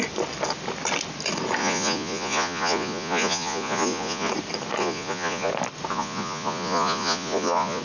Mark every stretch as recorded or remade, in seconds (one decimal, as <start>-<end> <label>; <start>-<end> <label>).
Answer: 0.0-1.6 recorded; 1.6-4.3 remade; 4.3-4.8 recorded; 4.8-5.5 remade; 5.5-5.9 recorded; 5.9-7.8 remade